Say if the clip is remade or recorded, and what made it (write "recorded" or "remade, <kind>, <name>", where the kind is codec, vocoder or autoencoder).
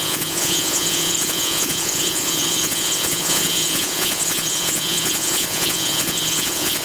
remade, vocoder, Vocos